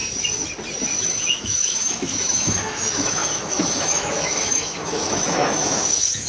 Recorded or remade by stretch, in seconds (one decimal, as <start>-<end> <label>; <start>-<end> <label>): 0.0-1.0 recorded; 1.0-6.3 remade